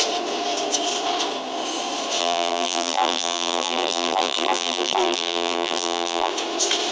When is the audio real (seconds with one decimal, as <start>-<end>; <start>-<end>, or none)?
0.0-2.2; 6.3-6.9